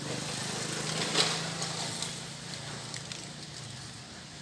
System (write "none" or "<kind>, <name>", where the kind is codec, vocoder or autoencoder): none